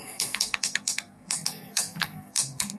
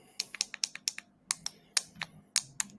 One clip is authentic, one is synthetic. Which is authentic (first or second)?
second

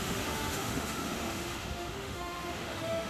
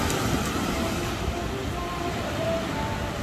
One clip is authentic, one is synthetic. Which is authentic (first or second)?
second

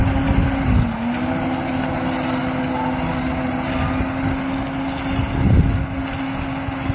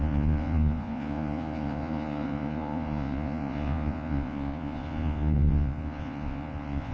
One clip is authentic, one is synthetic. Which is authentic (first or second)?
first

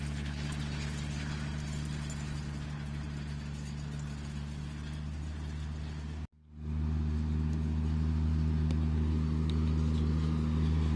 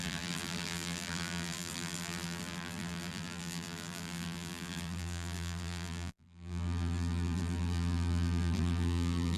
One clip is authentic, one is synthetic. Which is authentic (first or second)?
first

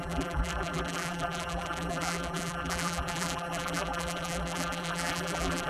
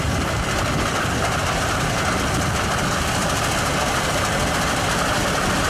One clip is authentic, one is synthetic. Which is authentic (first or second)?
second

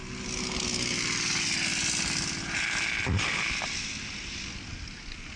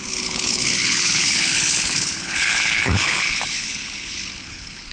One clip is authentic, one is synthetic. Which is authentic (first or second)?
first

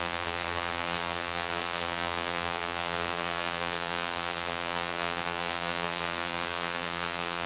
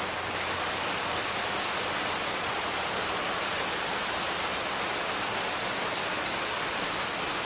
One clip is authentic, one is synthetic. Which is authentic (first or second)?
second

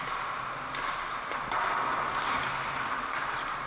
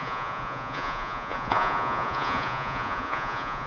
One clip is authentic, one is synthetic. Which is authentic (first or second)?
first